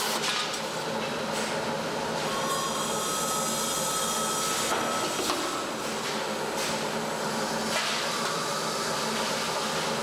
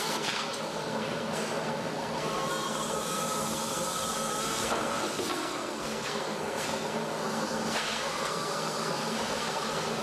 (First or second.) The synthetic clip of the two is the second